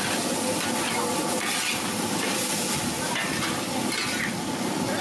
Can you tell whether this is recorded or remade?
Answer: recorded